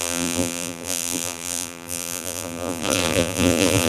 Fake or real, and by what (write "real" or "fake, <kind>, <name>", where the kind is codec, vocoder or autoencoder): fake, vocoder, BigVGAN v2